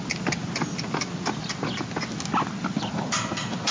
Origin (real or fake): real